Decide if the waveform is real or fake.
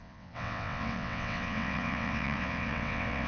fake